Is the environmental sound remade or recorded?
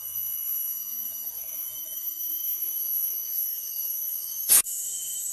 remade